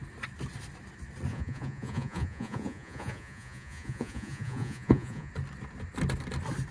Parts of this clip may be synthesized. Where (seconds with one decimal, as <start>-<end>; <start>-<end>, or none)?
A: 1.3-5.3